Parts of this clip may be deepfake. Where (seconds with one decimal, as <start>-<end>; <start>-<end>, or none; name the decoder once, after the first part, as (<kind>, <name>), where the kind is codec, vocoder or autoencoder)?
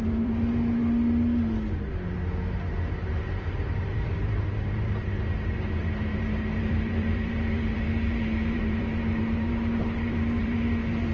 0.0-0.8 (vocoder, BigVGAN v2); 2.9-11.1